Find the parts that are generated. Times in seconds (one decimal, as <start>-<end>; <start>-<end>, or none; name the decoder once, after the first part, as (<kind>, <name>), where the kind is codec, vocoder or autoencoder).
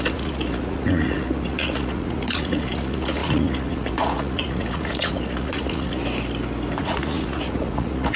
0.0-6.0 (vocoder, Vocos); 6.8-8.2